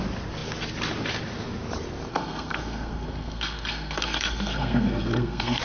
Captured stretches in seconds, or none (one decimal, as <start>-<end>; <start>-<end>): 0.0-2.1